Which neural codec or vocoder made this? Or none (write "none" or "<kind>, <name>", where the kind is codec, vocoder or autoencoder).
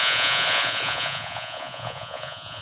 vocoder, Vocos